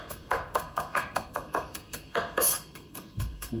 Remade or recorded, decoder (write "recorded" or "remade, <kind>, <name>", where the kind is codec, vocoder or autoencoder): remade, codec, SNAC